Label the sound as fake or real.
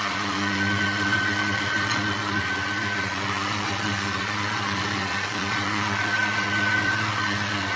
fake